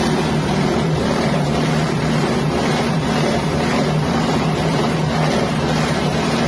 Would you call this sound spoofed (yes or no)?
yes